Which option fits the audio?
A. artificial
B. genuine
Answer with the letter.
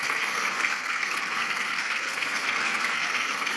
A